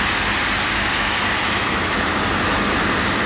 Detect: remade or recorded recorded